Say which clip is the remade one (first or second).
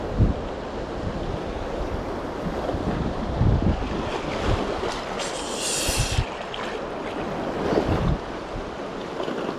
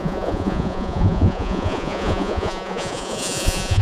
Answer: second